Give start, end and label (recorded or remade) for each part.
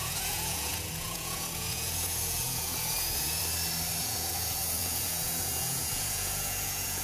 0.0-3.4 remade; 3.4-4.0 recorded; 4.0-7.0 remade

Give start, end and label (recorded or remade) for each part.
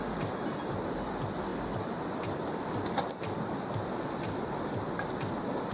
0.0-5.7 recorded